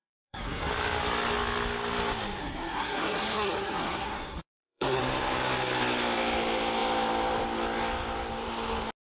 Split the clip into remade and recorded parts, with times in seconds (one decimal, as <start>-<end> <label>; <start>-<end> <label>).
0.0-0.7 remade; 0.7-2.4 recorded; 2.4-5.0 remade; 5.0-9.0 recorded